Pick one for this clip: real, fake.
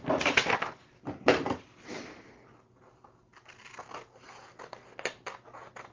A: real